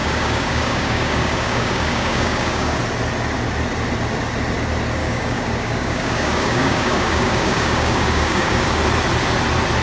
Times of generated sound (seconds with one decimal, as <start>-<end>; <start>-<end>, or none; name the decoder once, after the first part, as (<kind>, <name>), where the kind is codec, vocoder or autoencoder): 0.0-2.8 (codec, DAC); 5.0-8.8